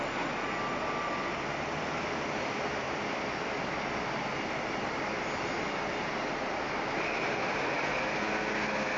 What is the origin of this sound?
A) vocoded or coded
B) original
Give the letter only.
B